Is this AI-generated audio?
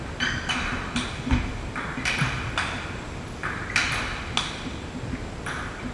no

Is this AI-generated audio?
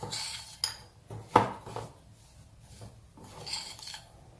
no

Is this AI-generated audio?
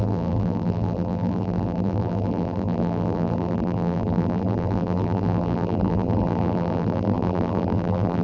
yes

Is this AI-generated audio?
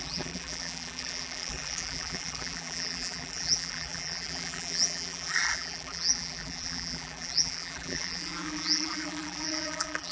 yes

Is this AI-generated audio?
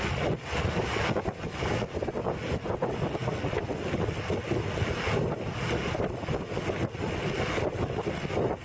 no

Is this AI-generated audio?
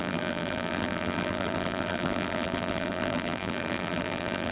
yes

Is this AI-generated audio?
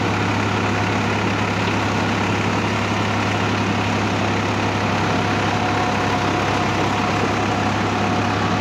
no